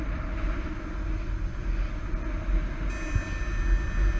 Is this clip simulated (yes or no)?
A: no